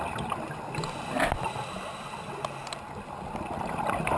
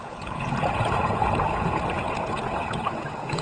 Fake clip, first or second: second